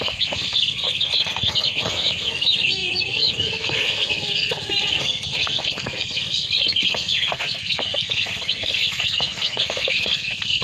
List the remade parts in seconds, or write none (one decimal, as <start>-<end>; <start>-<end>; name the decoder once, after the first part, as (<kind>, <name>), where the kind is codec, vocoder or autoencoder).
0.0-10.6 (codec, SNAC)